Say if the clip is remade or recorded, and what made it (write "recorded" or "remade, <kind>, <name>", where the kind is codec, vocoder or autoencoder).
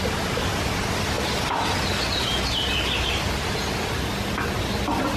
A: recorded